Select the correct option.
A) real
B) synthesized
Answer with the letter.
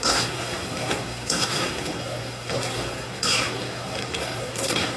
B